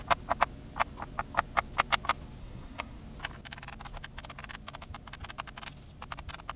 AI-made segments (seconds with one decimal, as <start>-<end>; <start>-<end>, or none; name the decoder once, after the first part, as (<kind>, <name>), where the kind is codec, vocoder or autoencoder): 2.4-3.0 (codec, SNAC)